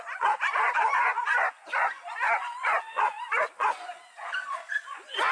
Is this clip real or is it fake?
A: fake